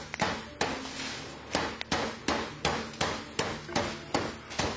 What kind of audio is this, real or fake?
real